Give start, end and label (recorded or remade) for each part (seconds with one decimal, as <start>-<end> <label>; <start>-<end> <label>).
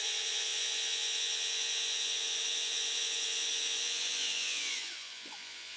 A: 0.0-5.8 remade